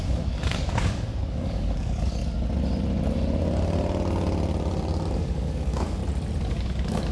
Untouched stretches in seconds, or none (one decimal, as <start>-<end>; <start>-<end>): 2.2-5.1; 6.0-6.5